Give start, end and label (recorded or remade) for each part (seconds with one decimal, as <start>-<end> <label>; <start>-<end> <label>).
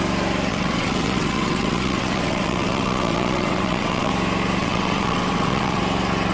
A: 0.0-0.5 recorded; 0.5-4.1 remade; 4.1-4.6 recorded; 4.6-5.8 remade; 5.8-6.3 recorded